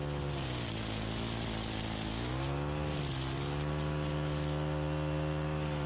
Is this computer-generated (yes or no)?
no